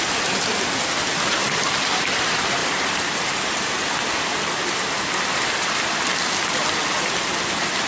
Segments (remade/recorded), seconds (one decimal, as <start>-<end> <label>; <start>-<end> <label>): 0.0-2.6 recorded; 2.6-3.8 remade; 3.8-7.9 recorded